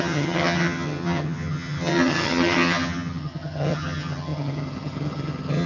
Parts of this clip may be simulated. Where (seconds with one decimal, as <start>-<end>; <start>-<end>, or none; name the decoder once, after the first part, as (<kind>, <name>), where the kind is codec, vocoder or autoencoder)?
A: 0.0-5.7 (vocoder, HiFi-GAN)